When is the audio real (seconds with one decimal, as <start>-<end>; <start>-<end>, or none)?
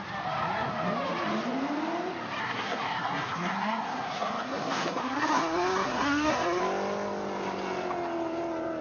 0.0-2.4; 6.6-8.8